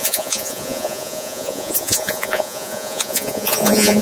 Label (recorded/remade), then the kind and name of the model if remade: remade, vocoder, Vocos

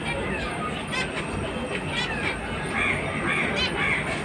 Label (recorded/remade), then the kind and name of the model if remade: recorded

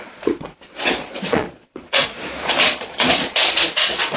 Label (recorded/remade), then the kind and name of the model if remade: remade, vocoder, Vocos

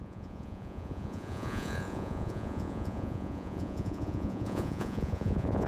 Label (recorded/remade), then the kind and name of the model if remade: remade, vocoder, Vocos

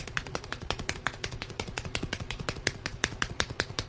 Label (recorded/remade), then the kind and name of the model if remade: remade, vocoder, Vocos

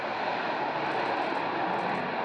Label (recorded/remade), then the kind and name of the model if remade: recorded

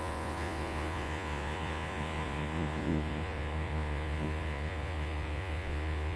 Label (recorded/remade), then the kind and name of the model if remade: remade, vocoder, Vocos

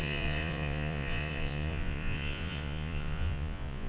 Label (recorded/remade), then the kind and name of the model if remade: remade, vocoder, Vocos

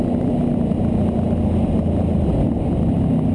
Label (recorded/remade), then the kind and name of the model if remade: recorded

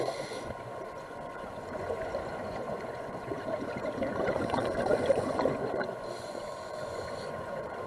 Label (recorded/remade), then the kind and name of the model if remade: remade, vocoder, Vocos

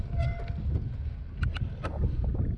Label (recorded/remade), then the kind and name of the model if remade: recorded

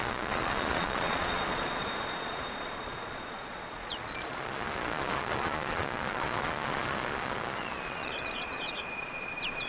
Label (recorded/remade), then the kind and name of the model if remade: remade, vocoder, Vocos